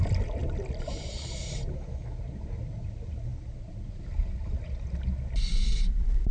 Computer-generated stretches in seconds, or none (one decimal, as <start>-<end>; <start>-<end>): none